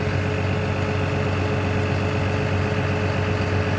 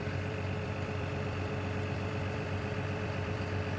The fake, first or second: second